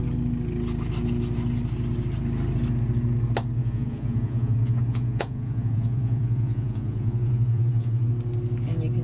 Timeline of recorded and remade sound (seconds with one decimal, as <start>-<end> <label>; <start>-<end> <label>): 0.0-3.6 recorded; 3.6-8.1 remade; 8.1-9.0 recorded